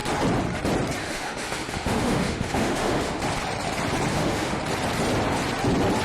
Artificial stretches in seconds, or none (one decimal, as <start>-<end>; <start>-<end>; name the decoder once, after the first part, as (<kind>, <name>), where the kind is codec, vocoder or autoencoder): 1.0-3.2 (autoencoder, DAC-VAE); 4.1-4.6